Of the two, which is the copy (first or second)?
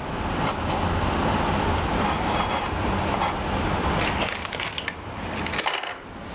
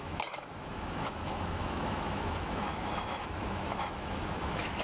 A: second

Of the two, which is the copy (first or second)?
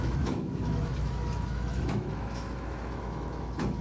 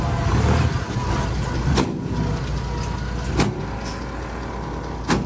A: first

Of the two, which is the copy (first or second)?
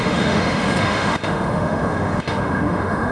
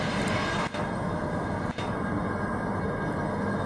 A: first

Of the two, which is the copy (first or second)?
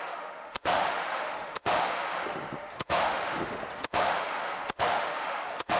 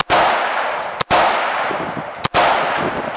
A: first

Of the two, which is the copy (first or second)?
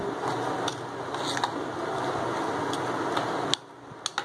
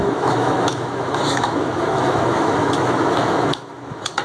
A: second